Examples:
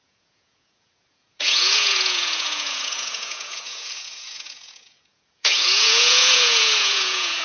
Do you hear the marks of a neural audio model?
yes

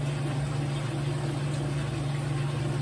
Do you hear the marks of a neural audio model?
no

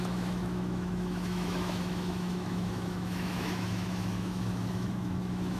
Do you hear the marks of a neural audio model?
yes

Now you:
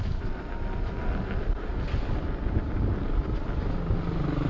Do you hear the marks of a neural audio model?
no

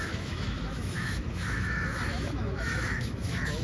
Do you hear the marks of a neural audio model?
yes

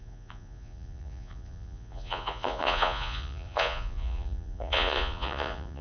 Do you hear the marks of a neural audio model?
yes